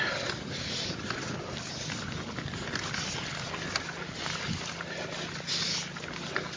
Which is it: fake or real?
real